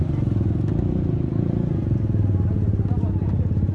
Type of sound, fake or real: real